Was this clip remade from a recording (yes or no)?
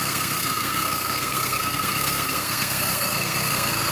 yes